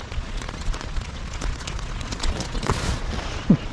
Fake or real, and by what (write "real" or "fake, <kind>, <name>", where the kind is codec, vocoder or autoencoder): fake, vocoder, Vocos